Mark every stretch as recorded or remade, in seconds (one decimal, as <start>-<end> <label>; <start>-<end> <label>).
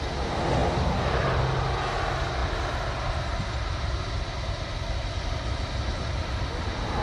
0.0-7.0 recorded